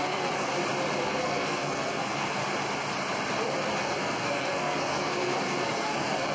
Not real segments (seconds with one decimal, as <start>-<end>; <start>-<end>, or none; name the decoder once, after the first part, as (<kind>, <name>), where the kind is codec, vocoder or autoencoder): 0.0-0.5 (codec, SNAC); 1.0-2.4; 3.8-6.3